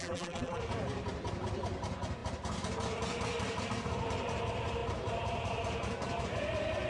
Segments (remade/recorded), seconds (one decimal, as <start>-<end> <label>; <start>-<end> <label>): 0.0-0.6 remade; 0.6-6.9 recorded